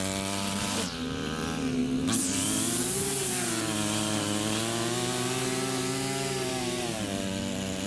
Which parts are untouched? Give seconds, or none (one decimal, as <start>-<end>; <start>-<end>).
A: 0.0-7.9